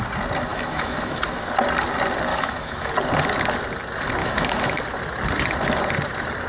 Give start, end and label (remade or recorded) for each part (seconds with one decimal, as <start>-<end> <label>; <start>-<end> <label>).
0.0-0.5 recorded; 0.5-1.2 remade; 1.2-2.3 recorded; 2.3-2.9 remade; 2.9-4.2 recorded; 4.2-4.8 remade; 4.8-6.5 recorded